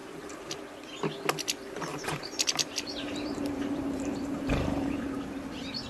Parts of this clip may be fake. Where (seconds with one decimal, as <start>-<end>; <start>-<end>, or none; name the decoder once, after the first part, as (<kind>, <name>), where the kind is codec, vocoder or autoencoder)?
0.0-0.5 (vocoder, BigVGAN v2); 1.9-5.1